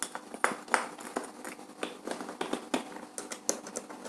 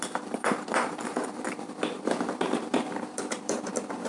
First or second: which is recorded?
first